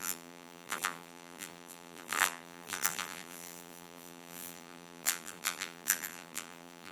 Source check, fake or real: fake